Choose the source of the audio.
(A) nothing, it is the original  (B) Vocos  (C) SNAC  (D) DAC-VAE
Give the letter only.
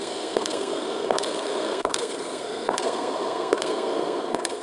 C